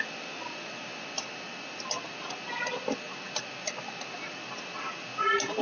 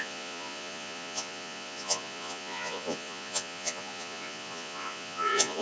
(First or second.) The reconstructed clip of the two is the second